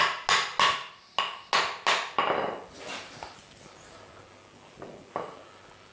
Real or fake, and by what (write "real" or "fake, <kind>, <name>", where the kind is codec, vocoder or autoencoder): real